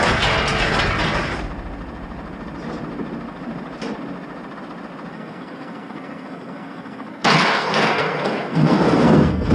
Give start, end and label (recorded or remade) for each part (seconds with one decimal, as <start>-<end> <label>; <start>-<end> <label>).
0.0-5.1 recorded; 5.1-9.5 remade

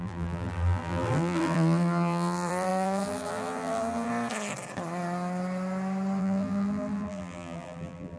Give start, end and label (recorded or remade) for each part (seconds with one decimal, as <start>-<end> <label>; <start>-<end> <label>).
0.0-4.1 remade; 4.1-6.2 recorded; 6.2-8.2 remade